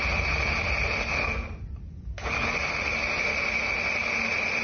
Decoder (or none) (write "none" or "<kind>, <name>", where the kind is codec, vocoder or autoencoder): none